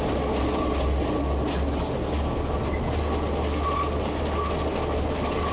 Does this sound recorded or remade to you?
recorded